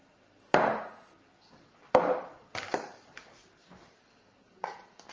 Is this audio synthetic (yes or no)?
no